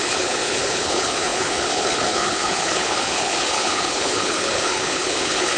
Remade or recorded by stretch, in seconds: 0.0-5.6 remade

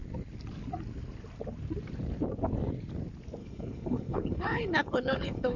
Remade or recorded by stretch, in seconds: 0.0-3.4 recorded; 3.4-5.6 remade

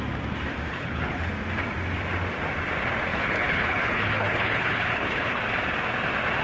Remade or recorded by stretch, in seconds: 0.0-0.7 recorded; 0.7-1.3 remade; 1.3-3.1 recorded; 3.1-5.4 remade; 5.4-6.4 recorded

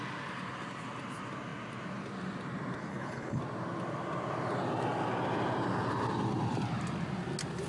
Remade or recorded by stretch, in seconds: 0.0-2.9 recorded; 2.9-3.4 remade; 3.4-7.7 recorded